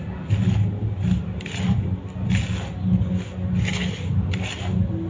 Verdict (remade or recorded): recorded